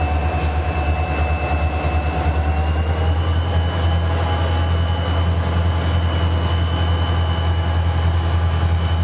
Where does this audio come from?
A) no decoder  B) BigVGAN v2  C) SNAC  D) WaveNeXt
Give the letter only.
A